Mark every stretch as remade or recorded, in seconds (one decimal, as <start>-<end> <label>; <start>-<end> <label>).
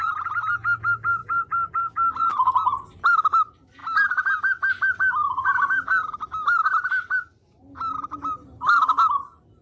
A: 0.0-9.6 recorded